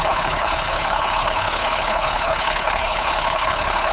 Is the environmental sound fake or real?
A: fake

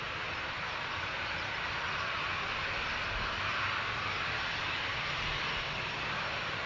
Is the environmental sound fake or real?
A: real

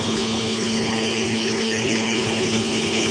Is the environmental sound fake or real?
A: fake